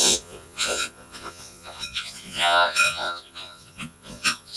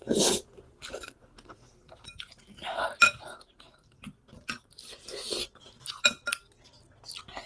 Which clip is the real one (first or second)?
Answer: second